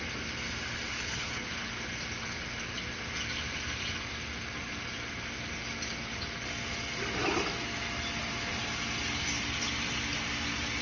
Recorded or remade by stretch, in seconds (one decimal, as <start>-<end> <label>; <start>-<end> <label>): 0.0-0.9 recorded; 0.9-1.7 remade; 1.7-10.8 recorded